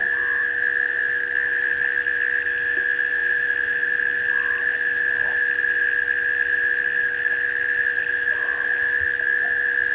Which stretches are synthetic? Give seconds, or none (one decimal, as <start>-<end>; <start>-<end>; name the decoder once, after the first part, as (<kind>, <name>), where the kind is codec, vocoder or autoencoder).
0.4-1.0 (autoencoder, DAC-VAE)